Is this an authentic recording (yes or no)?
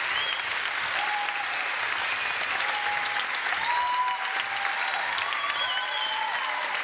yes